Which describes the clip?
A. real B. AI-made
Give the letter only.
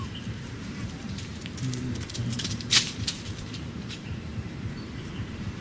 B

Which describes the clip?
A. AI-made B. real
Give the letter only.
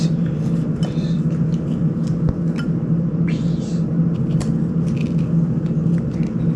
B